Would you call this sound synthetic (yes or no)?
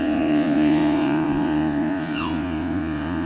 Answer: yes